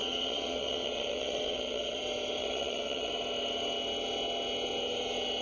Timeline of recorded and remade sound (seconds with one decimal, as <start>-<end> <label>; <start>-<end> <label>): 0.0-2.0 remade; 2.0-2.4 recorded; 2.4-3.1 remade; 3.1-5.4 recorded